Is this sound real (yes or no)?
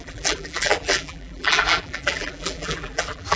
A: no